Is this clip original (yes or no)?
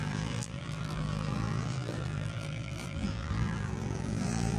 no